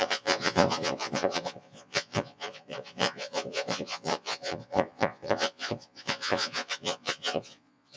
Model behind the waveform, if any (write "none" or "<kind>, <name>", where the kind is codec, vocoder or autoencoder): vocoder, Vocos